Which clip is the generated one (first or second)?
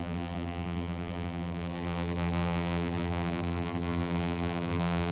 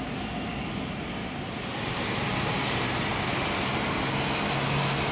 first